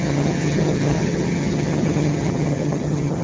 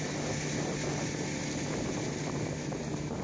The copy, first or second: first